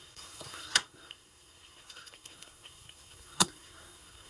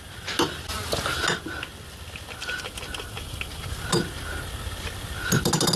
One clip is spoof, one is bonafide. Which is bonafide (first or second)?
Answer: second